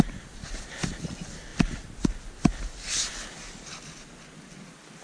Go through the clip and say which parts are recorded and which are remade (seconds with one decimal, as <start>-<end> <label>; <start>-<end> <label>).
0.0-5.0 recorded